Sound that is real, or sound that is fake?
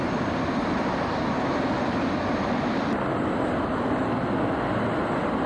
real